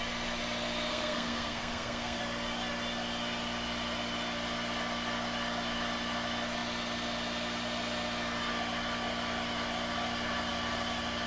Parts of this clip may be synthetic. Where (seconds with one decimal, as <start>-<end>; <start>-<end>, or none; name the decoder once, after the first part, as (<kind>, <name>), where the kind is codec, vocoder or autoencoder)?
0.9-2.2 (codec, SNAC)